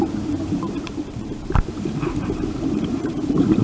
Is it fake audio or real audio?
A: fake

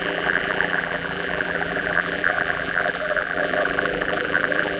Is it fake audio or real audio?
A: fake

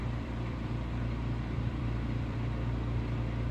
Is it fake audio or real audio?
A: fake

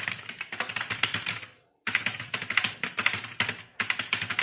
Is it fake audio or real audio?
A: real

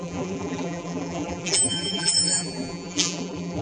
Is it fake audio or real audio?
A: fake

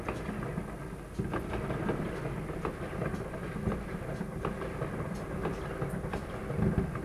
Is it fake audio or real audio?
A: real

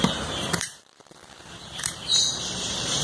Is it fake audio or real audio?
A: fake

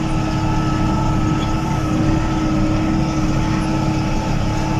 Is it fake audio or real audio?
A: real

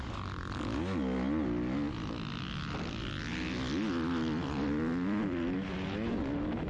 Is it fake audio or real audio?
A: real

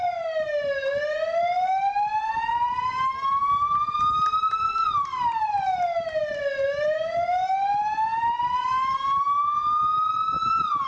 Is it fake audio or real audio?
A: real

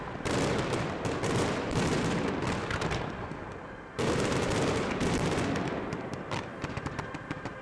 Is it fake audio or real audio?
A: fake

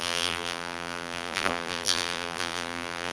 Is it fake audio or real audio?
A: fake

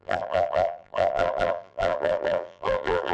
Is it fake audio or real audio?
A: fake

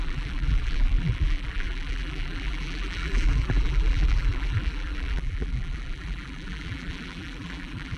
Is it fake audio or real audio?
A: fake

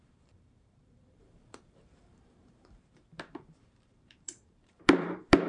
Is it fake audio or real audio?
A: fake